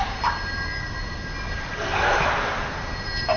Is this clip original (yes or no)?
yes